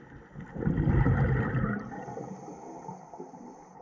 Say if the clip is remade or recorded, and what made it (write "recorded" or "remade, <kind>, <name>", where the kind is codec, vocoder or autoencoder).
recorded